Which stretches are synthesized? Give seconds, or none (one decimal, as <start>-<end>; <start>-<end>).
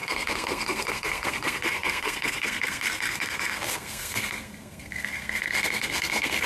0.0-6.5